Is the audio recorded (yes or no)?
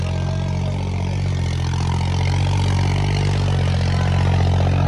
yes